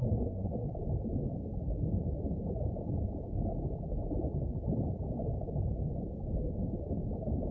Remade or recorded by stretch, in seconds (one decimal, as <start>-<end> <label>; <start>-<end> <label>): 0.0-0.7 remade; 0.7-7.5 recorded